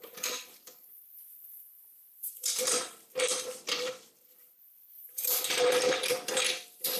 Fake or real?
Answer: fake